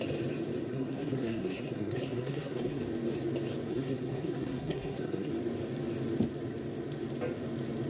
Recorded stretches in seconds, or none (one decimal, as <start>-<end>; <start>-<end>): 0.0-0.7; 2.8-3.7; 5.3-7.9